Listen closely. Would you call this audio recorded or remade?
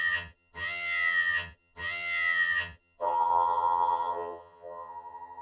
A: remade